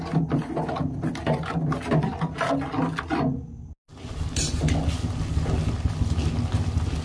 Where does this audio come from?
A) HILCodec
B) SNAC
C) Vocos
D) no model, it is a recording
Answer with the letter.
D